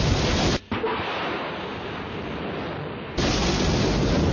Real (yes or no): yes